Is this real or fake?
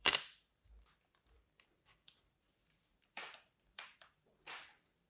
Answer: fake